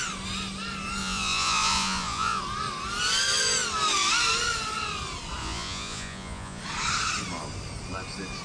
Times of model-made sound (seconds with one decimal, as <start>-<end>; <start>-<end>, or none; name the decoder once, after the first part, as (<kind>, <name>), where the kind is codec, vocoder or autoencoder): 1.0-2.4 (vocoder, Vocos); 5.4-6.6